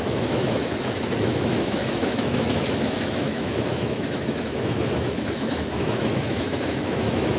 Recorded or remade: remade